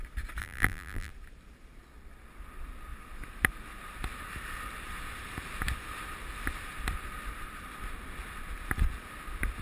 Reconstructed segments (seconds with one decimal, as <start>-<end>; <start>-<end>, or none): 0.4-1.1